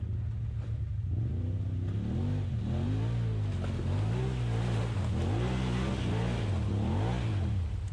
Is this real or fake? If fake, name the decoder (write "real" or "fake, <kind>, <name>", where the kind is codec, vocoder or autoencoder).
real